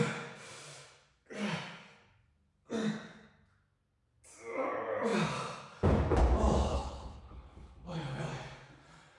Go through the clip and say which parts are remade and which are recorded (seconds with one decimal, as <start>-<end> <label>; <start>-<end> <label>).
0.0-6.7 recorded; 6.7-8.2 remade; 8.2-9.2 recorded